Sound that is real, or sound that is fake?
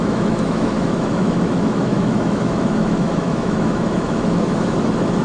fake